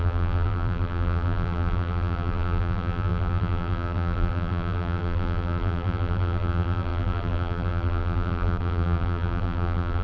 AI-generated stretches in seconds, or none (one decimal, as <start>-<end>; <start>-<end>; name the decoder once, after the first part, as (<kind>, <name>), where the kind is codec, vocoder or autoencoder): 0.0-10.0 (vocoder, BigVGAN v2)